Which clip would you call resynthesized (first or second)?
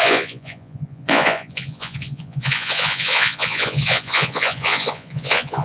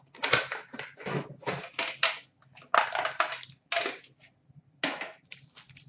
first